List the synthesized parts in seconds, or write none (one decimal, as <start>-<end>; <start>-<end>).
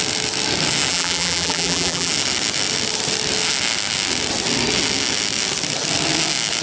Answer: 0.9-2.1